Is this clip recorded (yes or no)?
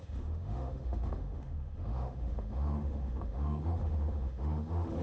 no